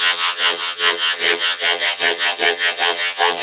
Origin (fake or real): fake